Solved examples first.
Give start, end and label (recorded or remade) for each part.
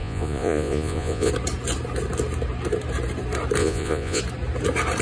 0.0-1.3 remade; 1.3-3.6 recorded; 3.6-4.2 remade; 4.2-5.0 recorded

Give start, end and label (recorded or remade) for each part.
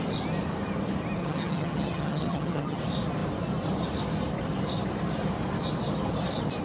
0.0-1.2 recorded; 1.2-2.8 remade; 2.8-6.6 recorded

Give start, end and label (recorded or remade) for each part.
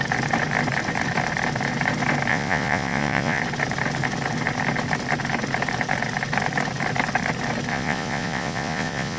0.0-2.3 recorded; 2.3-3.4 remade; 3.4-7.7 recorded; 7.7-9.2 remade